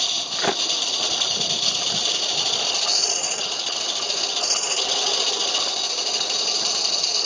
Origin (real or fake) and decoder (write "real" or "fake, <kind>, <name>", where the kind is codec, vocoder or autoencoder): real